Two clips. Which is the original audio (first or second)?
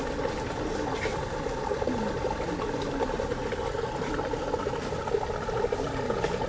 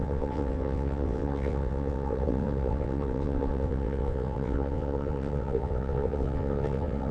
first